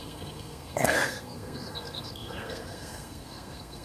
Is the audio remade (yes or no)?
yes